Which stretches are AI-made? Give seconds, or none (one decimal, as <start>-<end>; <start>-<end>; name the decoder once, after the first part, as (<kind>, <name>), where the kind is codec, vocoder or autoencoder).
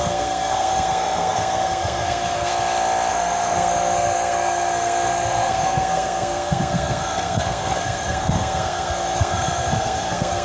0.0-2.5 (codec, SNAC); 3.1-10.4